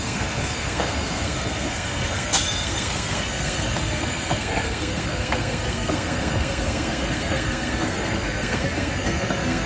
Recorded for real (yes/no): no